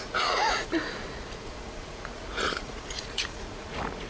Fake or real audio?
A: fake